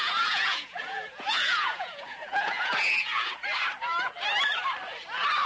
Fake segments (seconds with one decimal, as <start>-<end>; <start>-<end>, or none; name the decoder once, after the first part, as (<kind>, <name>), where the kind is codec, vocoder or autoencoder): 0.0-3.3 (vocoder, Vocos)

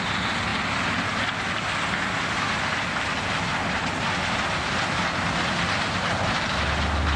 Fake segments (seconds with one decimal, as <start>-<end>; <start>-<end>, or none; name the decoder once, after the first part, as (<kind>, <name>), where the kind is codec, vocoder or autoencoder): none

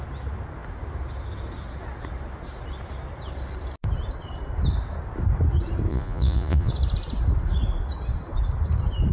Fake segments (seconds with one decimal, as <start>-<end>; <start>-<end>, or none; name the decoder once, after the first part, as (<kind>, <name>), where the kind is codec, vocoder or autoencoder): 5.9-6.7 (vocoder, Vocos)

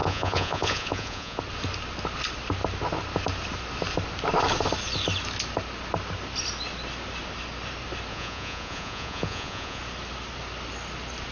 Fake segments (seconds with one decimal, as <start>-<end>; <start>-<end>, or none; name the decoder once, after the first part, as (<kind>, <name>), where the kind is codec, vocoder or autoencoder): 0.0-1.4 (vocoder, Vocos); 8.1-9.8

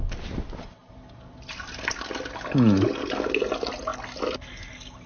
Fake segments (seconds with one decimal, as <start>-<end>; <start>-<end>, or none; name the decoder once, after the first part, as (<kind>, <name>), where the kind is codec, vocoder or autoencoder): none